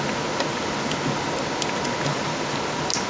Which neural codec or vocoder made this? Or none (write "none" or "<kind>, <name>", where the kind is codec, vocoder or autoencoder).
none